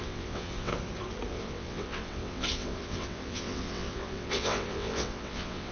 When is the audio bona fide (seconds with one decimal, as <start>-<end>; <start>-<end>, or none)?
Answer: 0.7-1.3